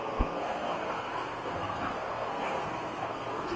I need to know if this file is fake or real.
fake